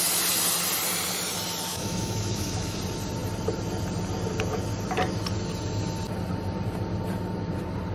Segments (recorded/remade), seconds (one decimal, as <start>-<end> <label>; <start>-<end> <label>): 0.0-1.7 recorded; 1.7-2.8 remade; 2.8-7.9 recorded